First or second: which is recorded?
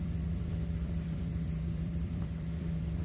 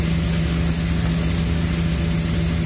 second